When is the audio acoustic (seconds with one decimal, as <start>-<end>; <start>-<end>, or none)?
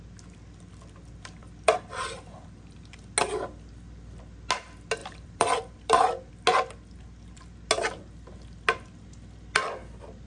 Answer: 0.0-1.4; 2.8-5.0; 6.3-10.3